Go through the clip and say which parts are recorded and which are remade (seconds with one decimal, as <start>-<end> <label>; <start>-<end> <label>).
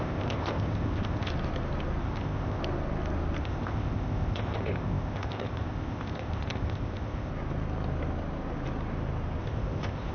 0.0-1.3 remade; 1.3-2.0 recorded; 2.0-2.6 remade; 2.6-3.4 recorded; 3.4-7.3 remade; 7.3-9.4 recorded; 9.4-10.1 remade